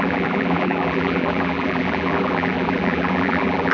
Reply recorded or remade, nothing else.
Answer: remade